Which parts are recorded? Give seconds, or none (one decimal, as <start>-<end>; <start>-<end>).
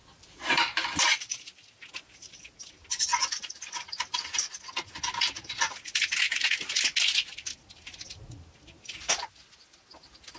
0.0-10.4